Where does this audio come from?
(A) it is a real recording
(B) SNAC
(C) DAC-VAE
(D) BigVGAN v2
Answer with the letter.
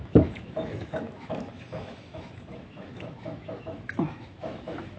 C